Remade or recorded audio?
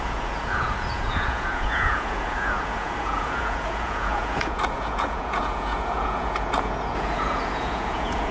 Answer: remade